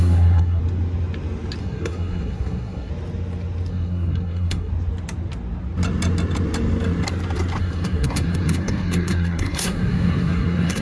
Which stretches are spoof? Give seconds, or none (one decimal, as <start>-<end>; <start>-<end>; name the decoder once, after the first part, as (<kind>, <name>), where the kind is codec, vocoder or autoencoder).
0.0-0.6 (codec, SNAC); 1.6-2.9; 3.7-4.7; 7.6-10.8